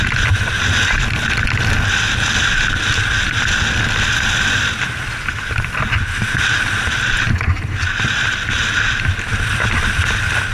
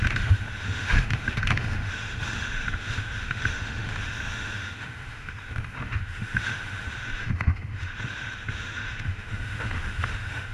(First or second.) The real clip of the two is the first